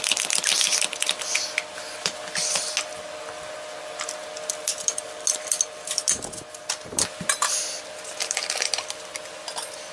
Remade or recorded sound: recorded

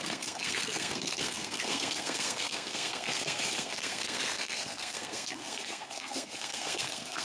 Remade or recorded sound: remade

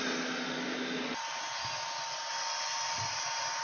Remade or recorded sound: recorded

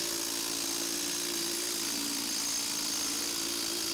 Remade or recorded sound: recorded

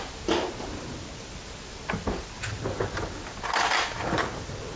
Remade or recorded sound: recorded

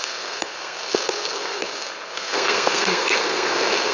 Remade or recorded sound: remade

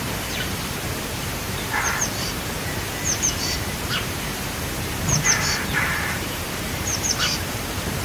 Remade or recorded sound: remade